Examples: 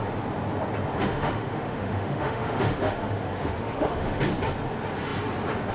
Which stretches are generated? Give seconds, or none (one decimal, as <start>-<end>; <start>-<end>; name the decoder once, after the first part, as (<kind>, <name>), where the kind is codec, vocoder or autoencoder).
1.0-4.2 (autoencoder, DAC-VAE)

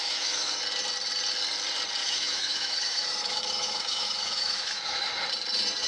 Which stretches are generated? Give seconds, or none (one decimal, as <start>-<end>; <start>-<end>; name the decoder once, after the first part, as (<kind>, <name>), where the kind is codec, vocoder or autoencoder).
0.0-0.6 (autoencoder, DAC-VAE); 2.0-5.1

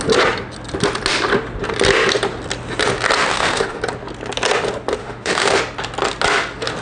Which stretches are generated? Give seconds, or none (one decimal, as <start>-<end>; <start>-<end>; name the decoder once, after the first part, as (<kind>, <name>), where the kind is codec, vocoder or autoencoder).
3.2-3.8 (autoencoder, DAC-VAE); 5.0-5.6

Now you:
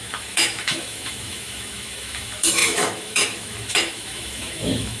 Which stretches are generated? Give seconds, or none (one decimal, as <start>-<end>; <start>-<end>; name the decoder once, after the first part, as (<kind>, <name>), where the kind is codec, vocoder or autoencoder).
0.0-5.0 (autoencoder, DAC-VAE)

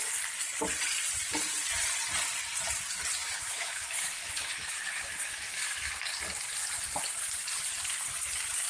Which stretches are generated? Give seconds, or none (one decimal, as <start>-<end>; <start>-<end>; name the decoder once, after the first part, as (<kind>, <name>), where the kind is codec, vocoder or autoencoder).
3.2-5.9 (autoencoder, DAC-VAE)